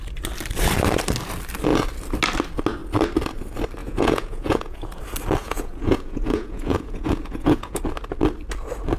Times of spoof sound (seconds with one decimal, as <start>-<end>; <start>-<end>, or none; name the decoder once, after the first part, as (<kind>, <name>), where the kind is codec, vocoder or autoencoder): 3.8-5.0 (vocoder, Vocos); 5.4-7.8